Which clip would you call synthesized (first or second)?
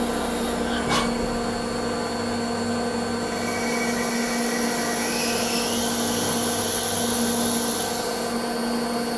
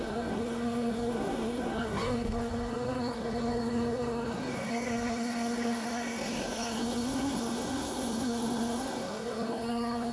second